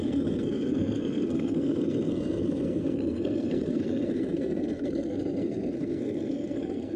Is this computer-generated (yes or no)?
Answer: yes